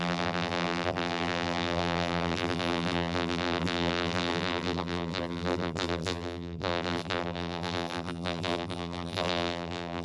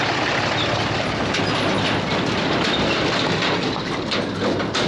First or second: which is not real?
first